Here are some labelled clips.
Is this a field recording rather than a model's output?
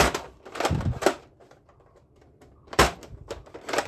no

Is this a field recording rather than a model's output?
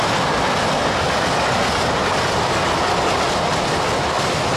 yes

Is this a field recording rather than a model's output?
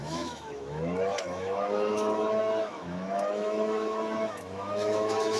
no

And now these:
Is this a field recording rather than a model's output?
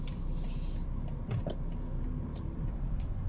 no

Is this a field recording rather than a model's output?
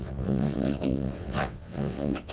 no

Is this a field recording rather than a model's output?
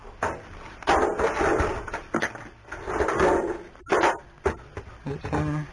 yes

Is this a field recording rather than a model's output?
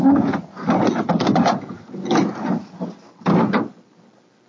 yes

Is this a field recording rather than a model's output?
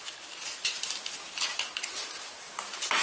yes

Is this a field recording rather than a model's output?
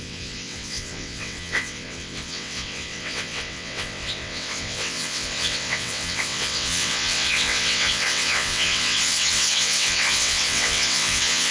no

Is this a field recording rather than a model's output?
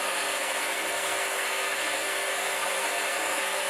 no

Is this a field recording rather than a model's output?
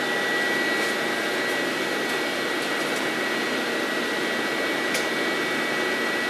yes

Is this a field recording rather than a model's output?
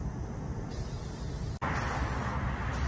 yes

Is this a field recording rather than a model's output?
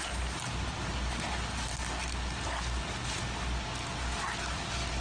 yes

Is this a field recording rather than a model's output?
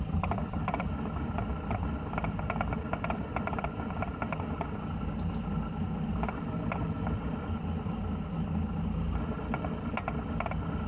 yes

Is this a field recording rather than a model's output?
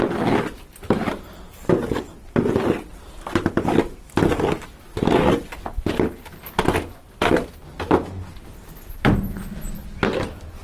yes